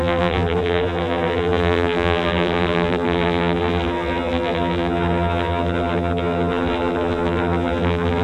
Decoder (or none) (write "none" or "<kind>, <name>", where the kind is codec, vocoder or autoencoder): vocoder, BigVGAN v2